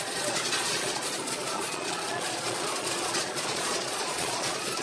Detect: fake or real fake